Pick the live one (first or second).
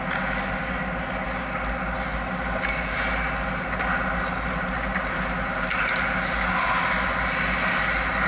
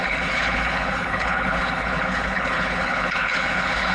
first